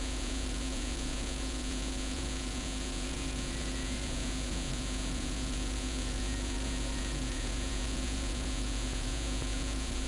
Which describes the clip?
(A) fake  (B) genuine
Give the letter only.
A